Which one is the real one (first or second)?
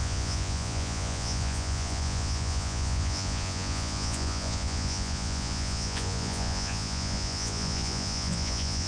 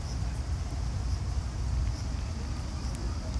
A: second